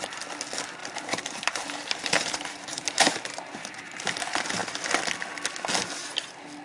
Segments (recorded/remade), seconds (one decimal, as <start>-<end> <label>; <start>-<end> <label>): 0.0-0.8 recorded; 0.8-4.0 remade; 4.0-6.6 recorded